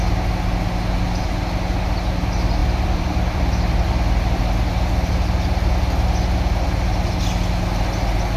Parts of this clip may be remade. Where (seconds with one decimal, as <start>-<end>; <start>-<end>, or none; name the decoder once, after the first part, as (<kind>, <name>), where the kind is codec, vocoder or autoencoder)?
2.6-4.4 (vocoder, BigVGAN v2)